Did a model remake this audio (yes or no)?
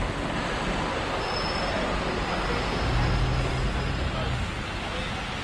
no